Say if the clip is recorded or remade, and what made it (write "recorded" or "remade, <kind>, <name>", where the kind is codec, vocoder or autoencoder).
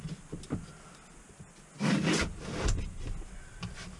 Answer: recorded